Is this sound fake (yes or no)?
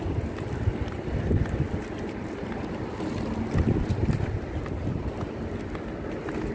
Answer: no